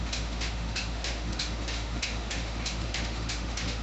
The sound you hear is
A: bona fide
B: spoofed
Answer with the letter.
B